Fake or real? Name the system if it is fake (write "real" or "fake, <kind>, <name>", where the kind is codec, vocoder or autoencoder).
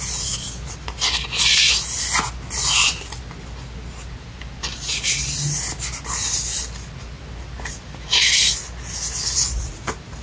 real